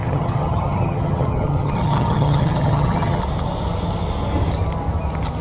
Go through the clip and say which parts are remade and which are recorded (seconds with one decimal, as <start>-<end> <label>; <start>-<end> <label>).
0.0-3.2 remade; 3.2-5.4 recorded